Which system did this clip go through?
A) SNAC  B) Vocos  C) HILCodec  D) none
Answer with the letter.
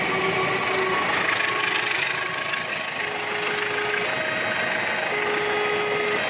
D